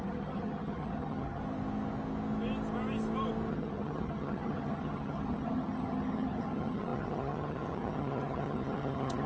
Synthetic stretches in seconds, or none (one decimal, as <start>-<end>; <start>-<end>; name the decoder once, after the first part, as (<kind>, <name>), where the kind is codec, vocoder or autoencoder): 0.0-1.4 (vocoder, HiFi-GAN); 3.5-9.3